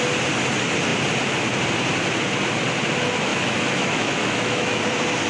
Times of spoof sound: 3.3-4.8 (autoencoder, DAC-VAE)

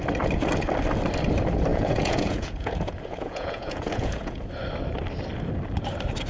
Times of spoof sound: 1.7-4.4 (vocoder, Vocos)

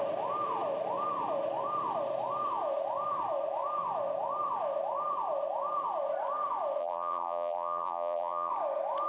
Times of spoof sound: 6.8-8.5 (vocoder, BigVGAN v2)

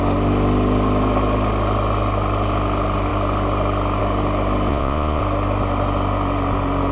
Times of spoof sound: 4.7-5.2 (vocoder, Vocos)